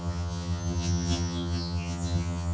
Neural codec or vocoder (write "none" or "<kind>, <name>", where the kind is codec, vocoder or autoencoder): vocoder, HiFi-GAN